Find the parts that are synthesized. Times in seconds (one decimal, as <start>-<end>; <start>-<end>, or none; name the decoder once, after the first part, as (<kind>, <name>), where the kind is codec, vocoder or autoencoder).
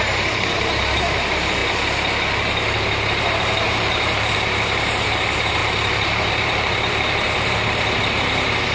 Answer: 0.0-1.6 (vocoder, BigVGAN v2); 3.4-8.7